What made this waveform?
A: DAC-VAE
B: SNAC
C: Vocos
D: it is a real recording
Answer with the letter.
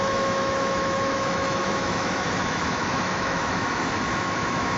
A